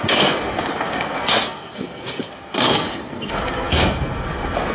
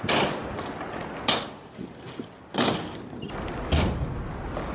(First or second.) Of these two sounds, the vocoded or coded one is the first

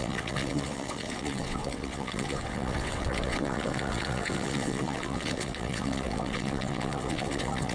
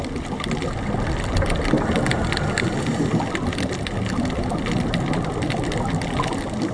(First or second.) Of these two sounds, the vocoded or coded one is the first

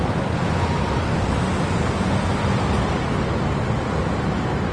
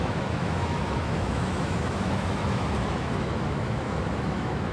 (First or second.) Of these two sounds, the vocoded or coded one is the second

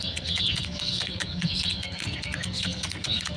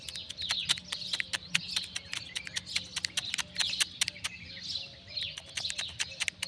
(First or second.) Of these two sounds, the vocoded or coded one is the first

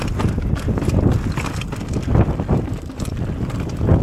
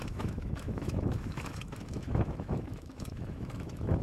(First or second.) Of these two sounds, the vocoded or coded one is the second